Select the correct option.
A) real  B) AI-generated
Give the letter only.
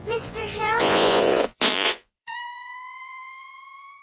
B